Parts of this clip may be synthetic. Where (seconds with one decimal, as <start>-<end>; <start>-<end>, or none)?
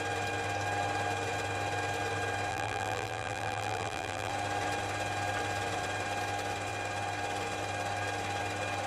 2.5-4.3